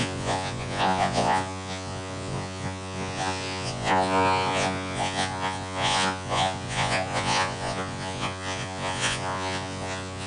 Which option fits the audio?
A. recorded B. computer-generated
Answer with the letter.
B